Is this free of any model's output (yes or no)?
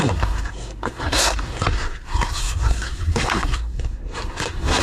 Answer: no